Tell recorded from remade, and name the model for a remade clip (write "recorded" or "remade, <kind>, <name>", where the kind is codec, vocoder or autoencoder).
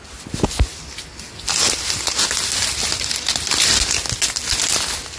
recorded